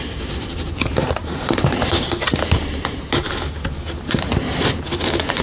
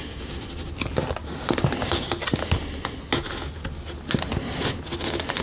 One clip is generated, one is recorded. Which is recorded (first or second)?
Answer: second